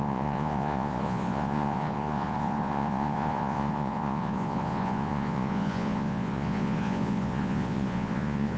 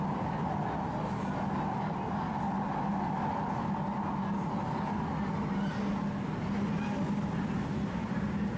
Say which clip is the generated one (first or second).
first